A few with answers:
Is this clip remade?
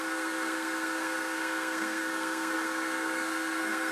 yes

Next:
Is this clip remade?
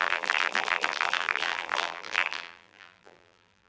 yes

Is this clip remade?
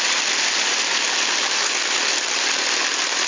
no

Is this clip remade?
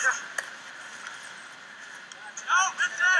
no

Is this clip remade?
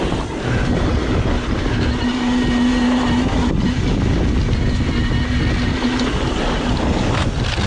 no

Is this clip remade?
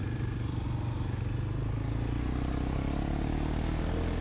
no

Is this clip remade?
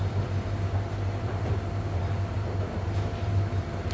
yes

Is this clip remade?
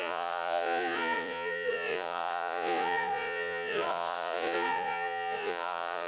yes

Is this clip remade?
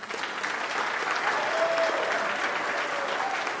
no